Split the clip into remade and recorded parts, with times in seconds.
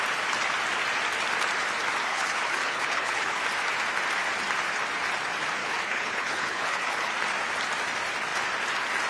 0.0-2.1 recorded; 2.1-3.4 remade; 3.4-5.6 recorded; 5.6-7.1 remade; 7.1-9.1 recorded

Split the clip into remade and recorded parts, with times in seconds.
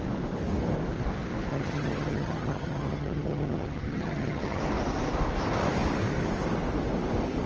0.0-1.5 recorded; 1.5-4.6 remade; 4.6-7.5 recorded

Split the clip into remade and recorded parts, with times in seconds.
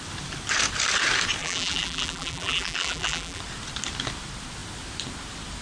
0.0-1.4 recorded; 1.4-3.4 remade; 3.4-5.6 recorded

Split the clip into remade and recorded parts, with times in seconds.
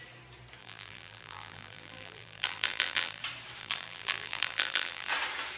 0.0-0.6 recorded; 0.6-3.2 remade; 3.2-3.6 recorded; 3.6-5.1 remade; 5.1-5.6 recorded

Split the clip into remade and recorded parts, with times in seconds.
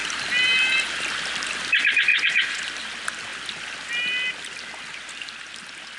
0.0-2.1 recorded; 2.1-2.6 remade; 2.6-6.0 recorded